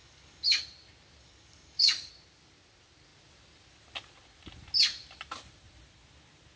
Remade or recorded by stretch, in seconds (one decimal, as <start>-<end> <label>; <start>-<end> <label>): 0.0-0.6 remade; 0.6-1.2 recorded; 1.2-2.1 remade; 2.1-6.6 recorded